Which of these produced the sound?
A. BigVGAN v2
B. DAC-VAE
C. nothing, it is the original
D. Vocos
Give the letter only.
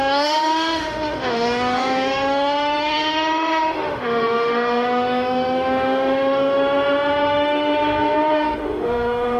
B